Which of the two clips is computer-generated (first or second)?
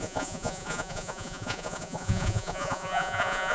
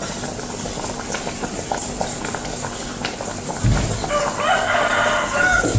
first